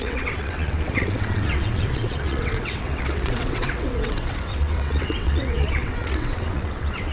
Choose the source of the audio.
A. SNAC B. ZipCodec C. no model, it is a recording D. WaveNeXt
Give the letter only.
D